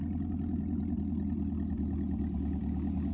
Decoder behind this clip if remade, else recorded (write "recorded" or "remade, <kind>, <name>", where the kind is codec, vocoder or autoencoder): recorded